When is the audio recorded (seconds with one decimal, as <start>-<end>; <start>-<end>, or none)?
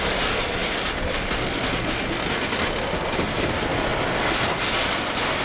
0.0-5.4